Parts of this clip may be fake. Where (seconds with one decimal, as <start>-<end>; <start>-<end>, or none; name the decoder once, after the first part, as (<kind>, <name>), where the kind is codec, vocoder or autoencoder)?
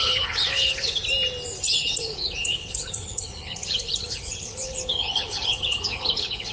0.0-1.0 (codec, HILCodec); 1.7-6.5